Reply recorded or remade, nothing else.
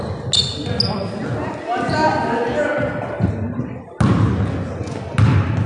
recorded